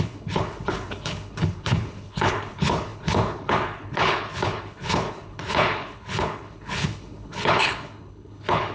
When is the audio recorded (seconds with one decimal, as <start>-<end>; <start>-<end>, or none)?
none

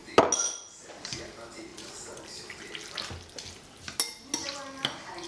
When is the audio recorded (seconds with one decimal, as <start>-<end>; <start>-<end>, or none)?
0.0-5.3

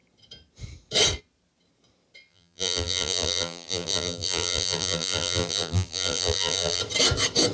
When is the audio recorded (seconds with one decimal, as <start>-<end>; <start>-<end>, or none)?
0.0-2.3; 6.8-7.5

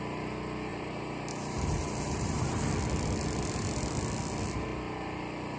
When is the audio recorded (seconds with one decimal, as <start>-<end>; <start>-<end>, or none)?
0.0-0.7; 2.7-5.6

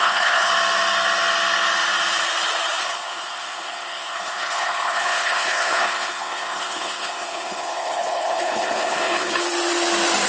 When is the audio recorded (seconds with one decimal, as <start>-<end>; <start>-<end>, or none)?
0.5-2.8; 9.4-10.3